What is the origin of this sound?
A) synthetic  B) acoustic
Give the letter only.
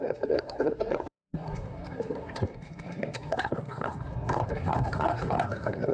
A